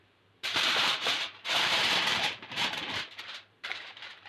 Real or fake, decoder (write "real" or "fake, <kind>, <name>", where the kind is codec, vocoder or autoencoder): fake, vocoder, BigVGAN v2